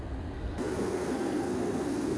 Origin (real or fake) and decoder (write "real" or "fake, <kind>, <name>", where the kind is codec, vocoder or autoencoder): fake, codec, SNAC